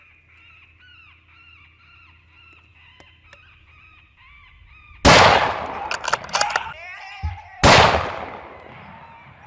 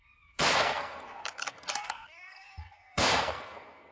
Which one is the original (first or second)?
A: first